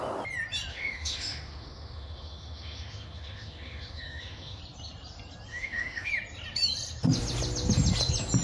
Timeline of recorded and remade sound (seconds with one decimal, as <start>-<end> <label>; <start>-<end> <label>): 0.0-0.7 recorded; 0.7-4.6 remade; 4.6-5.5 recorded; 5.5-6.1 remade; 6.1-8.4 recorded